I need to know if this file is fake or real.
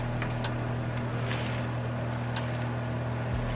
real